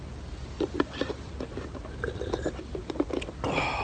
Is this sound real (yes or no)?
yes